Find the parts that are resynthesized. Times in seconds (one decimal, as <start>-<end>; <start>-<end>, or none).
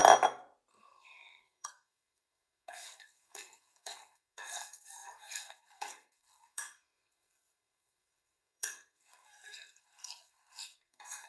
0.7-11.3